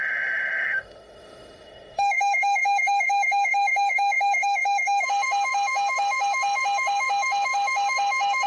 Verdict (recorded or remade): remade